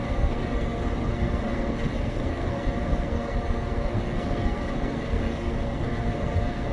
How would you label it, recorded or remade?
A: remade